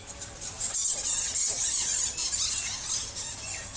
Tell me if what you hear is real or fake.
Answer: real